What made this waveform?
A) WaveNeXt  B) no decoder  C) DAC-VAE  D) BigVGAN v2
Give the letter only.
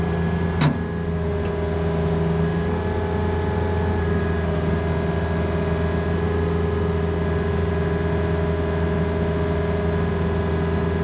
B